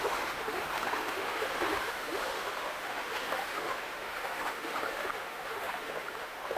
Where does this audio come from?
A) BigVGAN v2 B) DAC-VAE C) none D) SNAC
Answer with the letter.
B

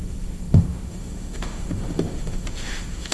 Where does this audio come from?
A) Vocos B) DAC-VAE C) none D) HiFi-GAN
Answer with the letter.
B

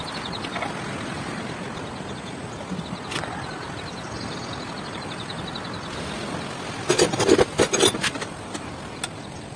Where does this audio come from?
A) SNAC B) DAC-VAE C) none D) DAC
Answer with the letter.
C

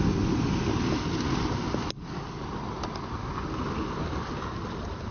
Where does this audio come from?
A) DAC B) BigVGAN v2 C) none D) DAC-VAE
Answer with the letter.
C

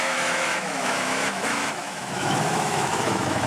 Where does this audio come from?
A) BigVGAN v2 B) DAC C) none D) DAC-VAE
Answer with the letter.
D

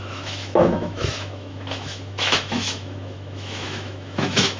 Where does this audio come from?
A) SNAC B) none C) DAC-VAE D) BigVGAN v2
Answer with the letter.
C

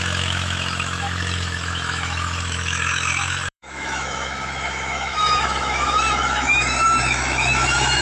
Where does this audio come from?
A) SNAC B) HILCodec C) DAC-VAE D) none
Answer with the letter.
C